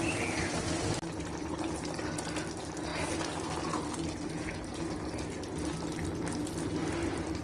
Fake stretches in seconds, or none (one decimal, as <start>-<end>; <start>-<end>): none